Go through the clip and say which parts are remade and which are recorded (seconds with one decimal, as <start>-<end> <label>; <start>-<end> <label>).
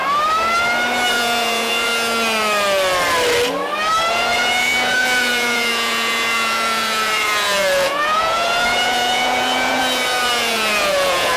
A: 0.0-1.1 recorded; 1.1-1.9 remade; 1.9-4.1 recorded; 4.1-11.4 remade